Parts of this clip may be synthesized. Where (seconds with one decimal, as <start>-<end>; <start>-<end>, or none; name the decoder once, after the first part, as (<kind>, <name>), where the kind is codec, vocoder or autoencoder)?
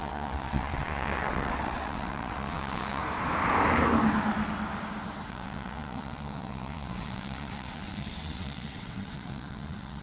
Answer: 0.0-3.0 (vocoder, WaveNeXt); 5.3-10.0